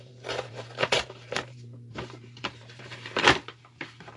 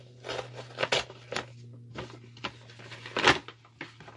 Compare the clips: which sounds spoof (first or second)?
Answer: first